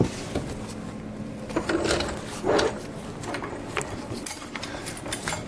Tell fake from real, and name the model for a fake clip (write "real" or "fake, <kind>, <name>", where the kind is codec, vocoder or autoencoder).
real